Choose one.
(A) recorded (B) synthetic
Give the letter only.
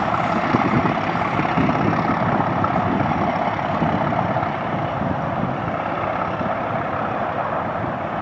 A